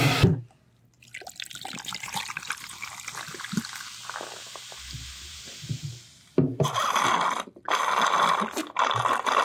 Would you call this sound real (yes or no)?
yes